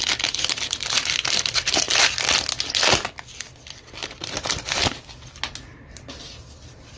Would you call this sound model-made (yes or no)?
no